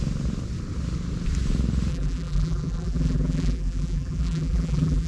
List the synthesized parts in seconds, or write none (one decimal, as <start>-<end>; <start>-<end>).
1.9-5.1